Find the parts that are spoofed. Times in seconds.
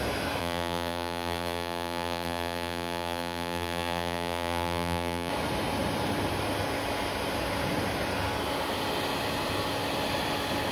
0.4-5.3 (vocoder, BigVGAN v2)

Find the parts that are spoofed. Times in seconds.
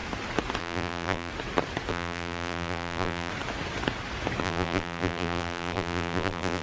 0.6-1.3 (vocoder, BigVGAN v2); 1.9-3.3; 4.4-6.6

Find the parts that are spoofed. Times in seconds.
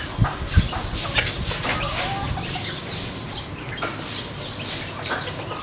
none